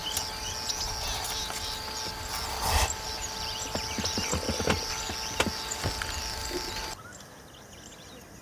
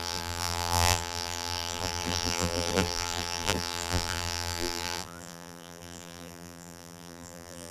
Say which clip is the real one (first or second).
first